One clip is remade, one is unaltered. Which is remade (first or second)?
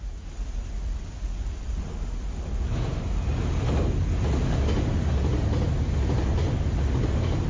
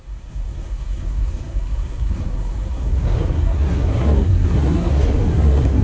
second